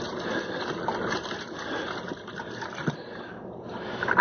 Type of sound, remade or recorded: recorded